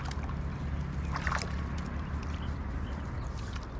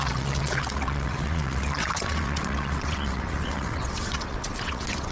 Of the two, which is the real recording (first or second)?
first